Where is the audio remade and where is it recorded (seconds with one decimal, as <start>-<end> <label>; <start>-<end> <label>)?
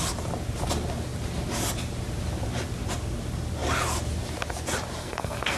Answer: 0.0-5.0 recorded; 5.0-5.6 remade